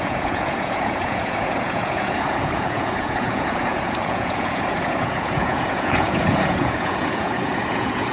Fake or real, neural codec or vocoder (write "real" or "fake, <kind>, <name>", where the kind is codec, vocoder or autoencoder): fake, vocoder, Vocos